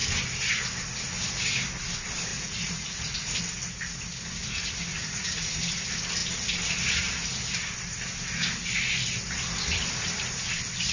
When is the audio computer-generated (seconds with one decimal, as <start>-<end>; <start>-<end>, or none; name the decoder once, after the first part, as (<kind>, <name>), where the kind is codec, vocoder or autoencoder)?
2.3-3.4 (vocoder, Vocos); 4.9-5.6